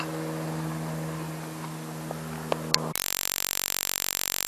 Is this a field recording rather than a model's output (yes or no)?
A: yes